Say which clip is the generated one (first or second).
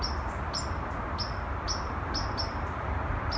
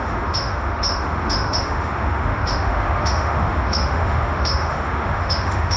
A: second